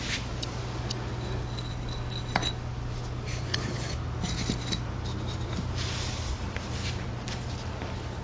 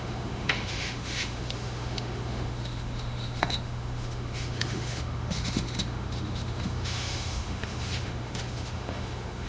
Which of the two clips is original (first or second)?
first